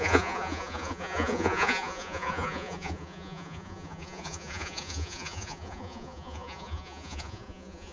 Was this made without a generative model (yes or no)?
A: no